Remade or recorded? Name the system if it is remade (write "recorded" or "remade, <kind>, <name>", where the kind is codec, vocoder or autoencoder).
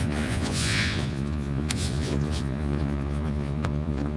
remade, vocoder, Vocos